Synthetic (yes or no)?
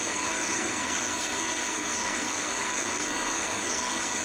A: yes